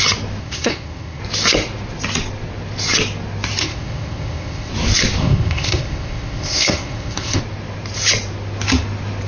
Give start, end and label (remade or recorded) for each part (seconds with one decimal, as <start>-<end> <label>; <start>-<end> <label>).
0.0-0.4 recorded; 0.4-1.2 remade; 1.2-3.6 recorded; 3.6-4.7 remade; 4.7-5.2 recorded; 5.2-7.4 remade; 7.4-9.3 recorded

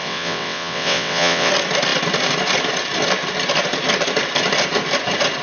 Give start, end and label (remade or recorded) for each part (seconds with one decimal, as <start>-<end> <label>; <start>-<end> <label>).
0.0-1.5 remade; 1.5-5.4 recorded

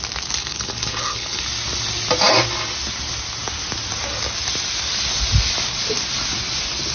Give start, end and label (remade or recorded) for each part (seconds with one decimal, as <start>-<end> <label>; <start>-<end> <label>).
0.0-0.4 recorded; 0.4-1.4 remade; 1.4-6.9 recorded

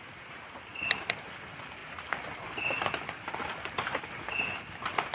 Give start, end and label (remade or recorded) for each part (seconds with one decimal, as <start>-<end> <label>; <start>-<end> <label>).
0.0-5.1 recorded

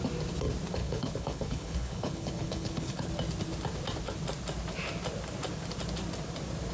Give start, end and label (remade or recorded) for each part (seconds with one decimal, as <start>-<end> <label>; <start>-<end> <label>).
0.0-0.8 recorded; 0.8-3.1 remade; 3.1-6.7 recorded

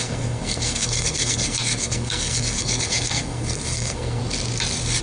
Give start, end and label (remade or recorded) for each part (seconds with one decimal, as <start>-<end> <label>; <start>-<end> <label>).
0.0-4.2 remade; 4.2-5.0 recorded